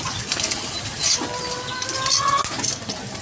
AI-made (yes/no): no